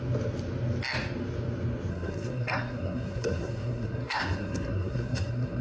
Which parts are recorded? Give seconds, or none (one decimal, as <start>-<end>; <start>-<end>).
0.0-1.9